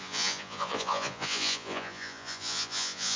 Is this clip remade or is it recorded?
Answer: remade